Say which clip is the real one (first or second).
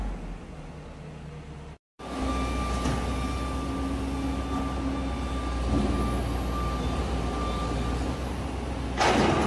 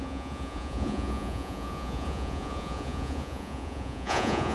first